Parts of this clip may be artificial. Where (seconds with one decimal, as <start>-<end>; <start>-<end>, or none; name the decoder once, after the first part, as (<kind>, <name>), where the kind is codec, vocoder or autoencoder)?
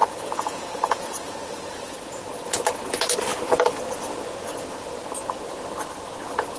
0.0-2.1 (vocoder, Vocos)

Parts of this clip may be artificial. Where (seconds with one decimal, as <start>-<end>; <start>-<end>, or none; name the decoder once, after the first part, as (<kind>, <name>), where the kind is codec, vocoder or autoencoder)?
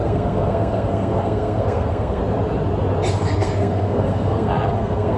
0.0-2.2 (codec, SNAC); 3.1-5.2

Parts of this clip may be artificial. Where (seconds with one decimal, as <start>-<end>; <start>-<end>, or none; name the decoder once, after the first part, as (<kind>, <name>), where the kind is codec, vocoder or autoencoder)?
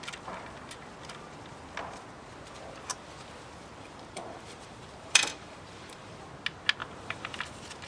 3.8-6.2 (vocoder, BigVGAN v2); 6.8-7.4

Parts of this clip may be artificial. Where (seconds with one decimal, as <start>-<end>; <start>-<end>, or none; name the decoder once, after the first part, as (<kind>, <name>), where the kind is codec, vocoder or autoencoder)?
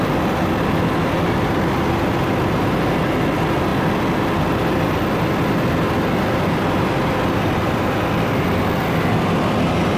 none